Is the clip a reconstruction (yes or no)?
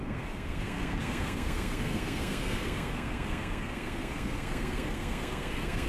yes